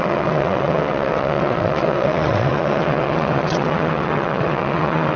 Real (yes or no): no